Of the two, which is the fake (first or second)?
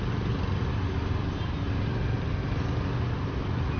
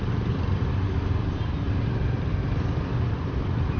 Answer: second